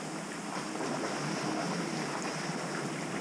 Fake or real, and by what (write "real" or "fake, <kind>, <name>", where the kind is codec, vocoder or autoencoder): real